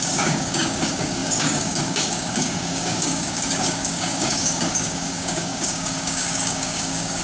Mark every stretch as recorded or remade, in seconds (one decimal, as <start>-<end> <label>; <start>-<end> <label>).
0.0-7.2 remade